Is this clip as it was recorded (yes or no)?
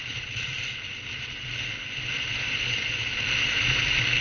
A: yes